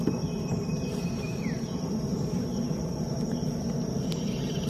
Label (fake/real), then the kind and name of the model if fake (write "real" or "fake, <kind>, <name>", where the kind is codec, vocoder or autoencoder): fake, vocoder, BigVGAN v2